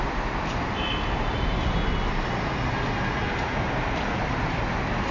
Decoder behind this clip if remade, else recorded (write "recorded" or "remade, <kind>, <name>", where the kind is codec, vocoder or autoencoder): recorded